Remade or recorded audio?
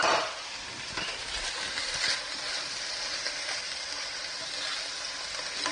recorded